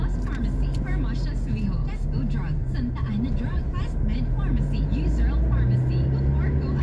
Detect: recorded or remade recorded